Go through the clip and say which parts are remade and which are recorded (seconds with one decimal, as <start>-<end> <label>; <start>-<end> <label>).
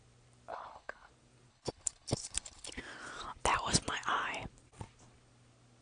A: 0.0-0.5 recorded; 0.5-1.1 remade; 1.1-1.5 recorded; 1.5-2.8 remade; 2.8-5.8 recorded